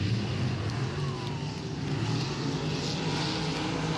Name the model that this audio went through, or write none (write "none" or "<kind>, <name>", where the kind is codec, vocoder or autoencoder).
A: none